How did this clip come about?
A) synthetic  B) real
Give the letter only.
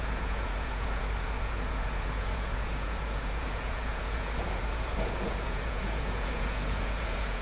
A